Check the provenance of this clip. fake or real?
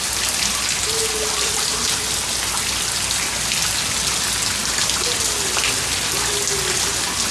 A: real